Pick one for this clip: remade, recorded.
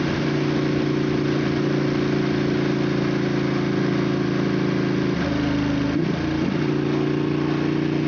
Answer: recorded